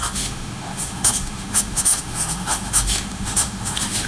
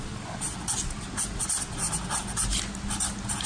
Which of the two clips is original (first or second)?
second